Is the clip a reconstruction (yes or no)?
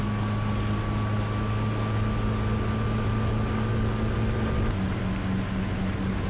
no